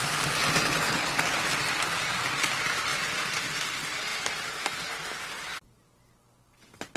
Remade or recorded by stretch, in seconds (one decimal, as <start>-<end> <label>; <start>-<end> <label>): 0.0-7.0 recorded